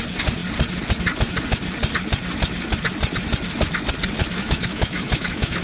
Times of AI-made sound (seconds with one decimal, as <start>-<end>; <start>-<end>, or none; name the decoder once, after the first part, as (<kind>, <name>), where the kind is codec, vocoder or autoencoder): 4.2-5.6 (autoencoder, DAC-VAE)